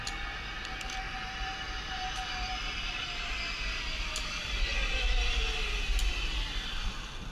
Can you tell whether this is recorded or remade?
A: recorded